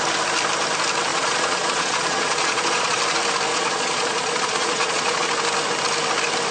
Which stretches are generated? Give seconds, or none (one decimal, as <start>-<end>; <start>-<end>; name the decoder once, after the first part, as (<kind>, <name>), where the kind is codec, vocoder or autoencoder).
1.1-3.0 (vocoder, Vocos); 3.5-5.3